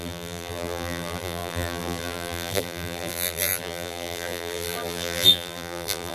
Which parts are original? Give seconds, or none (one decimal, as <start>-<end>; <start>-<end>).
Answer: none